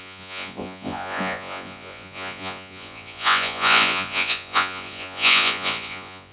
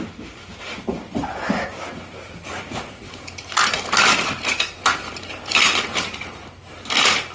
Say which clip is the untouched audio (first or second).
second